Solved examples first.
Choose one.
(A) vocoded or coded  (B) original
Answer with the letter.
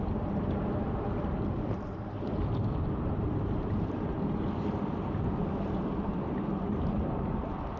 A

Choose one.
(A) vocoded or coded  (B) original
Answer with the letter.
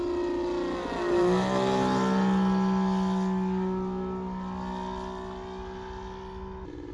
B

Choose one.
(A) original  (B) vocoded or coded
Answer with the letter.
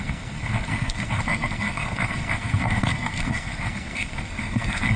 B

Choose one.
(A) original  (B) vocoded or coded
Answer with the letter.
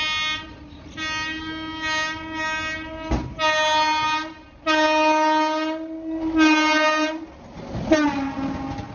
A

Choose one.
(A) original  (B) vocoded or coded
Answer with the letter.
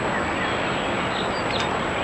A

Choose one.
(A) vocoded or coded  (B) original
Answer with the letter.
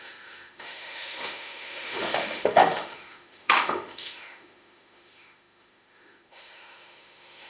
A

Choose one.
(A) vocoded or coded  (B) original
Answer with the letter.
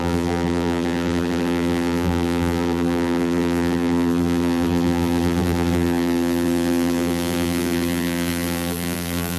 A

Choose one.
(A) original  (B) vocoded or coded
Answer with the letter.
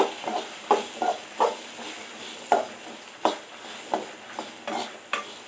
A